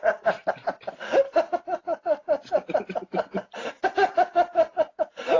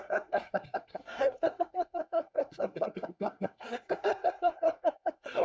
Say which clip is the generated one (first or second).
second